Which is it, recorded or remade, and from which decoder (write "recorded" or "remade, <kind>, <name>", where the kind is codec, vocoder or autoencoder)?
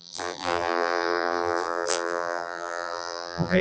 remade, vocoder, BigVGAN v2